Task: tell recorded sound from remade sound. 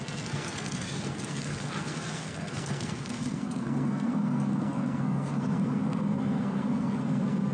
remade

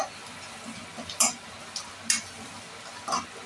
recorded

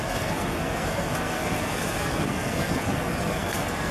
remade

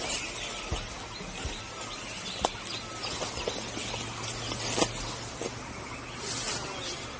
recorded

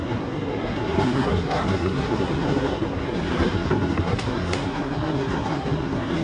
remade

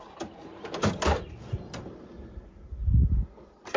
recorded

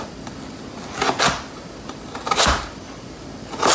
recorded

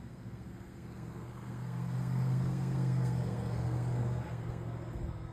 remade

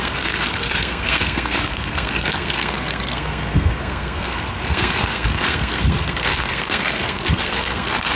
remade